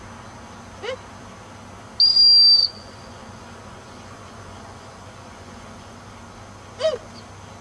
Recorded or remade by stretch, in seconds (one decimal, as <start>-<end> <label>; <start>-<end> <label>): 0.0-2.6 recorded; 2.6-6.0 remade; 6.0-7.6 recorded